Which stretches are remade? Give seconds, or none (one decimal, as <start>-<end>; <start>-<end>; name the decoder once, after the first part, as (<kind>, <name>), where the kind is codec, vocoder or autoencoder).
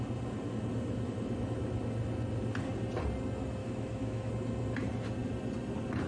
3.6-4.3 (autoencoder, DAC-VAE)